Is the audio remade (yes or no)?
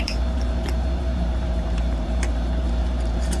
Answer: yes